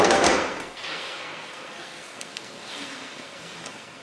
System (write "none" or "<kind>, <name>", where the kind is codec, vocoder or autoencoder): codec, SNAC